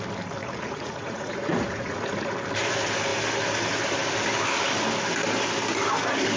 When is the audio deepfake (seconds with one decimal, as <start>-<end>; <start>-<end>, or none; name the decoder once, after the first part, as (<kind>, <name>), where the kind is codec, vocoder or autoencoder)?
0.4-2.3 (vocoder, Vocos)